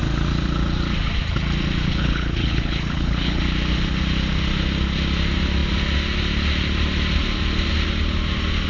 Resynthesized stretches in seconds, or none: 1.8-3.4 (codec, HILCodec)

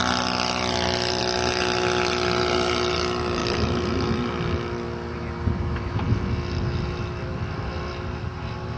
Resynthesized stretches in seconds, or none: none

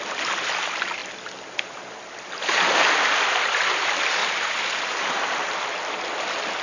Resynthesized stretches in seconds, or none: 4.2-5.2 (vocoder, BigVGAN v2)